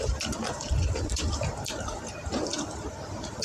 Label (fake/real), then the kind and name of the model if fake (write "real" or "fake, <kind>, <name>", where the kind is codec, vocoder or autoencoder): fake, vocoder, BigVGAN v2